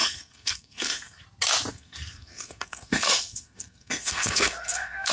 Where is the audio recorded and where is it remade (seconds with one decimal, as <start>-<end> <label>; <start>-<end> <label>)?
0.0-1.2 remade; 1.2-1.7 recorded; 1.7-5.1 remade